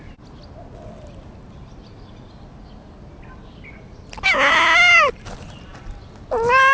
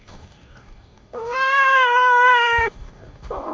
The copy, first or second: second